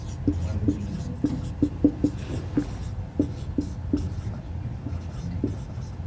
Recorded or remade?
recorded